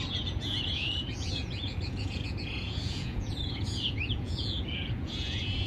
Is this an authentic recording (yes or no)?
no